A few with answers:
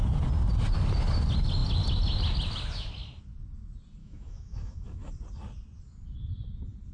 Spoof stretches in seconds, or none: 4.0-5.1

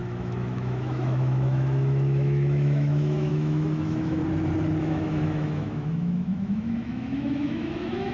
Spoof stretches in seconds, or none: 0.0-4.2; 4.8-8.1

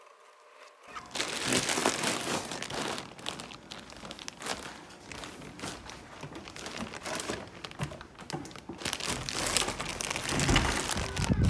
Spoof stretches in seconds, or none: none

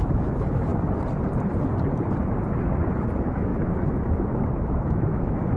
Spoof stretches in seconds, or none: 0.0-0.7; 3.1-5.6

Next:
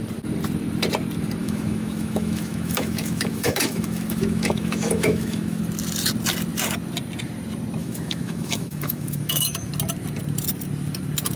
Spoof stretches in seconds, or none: 1.4-5.6; 7.8-9.7

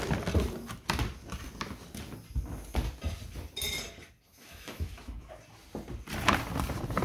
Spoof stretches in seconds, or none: 4.3-5.3

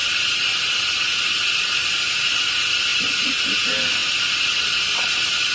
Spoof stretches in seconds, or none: none

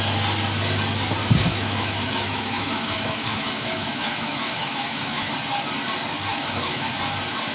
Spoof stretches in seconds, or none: 1.5-5.3; 6.3-6.9